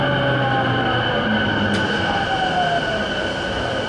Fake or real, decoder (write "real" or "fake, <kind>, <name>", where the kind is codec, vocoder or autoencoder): real